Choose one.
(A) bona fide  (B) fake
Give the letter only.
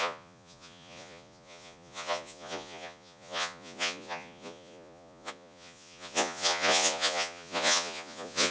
B